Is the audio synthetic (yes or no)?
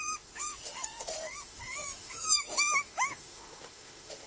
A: yes